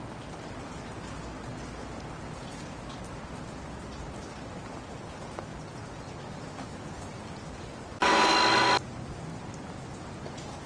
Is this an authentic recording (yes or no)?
yes